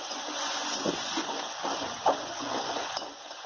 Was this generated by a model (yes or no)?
yes